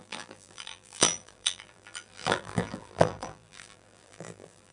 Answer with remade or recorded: remade